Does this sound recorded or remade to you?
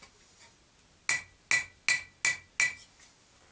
recorded